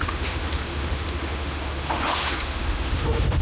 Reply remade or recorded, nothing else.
remade